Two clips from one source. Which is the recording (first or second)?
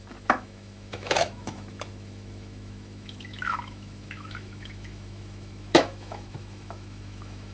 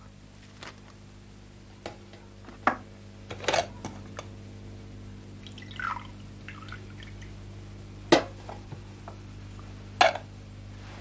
second